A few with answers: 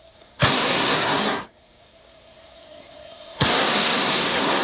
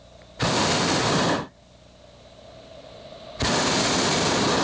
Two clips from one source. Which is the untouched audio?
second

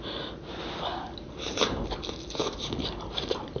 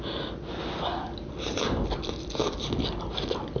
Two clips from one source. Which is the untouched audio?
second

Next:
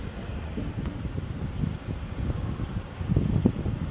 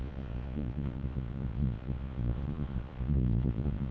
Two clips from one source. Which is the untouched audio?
first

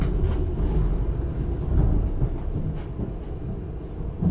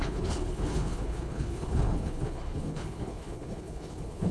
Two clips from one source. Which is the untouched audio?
first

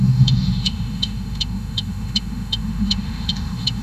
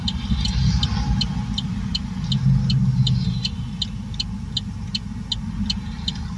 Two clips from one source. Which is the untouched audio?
second